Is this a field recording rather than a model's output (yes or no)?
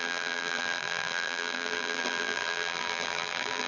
no